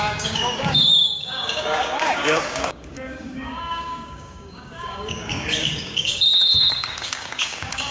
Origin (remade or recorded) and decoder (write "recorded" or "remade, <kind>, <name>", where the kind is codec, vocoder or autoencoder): remade, codec, DAC